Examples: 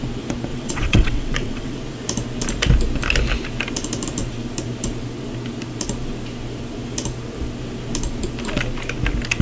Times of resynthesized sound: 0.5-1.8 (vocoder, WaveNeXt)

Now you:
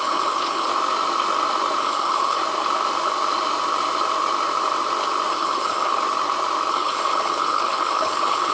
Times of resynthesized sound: 0.0-0.7 (codec, HILCodec); 1.8-2.4; 5.3-5.9; 6.7-8.5